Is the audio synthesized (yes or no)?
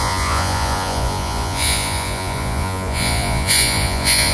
yes